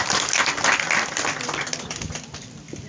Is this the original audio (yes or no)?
yes